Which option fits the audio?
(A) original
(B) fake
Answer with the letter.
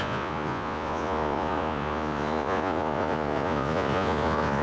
B